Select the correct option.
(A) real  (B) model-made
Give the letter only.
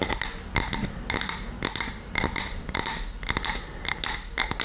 A